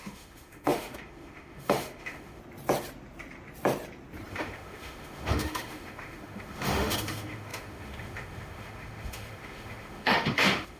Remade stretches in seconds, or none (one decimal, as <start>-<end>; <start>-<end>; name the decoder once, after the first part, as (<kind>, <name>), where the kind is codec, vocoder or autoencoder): 0.0-2.4 (autoencoder, DAC-VAE); 4.3-10.8